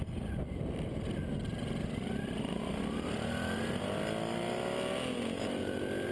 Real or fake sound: real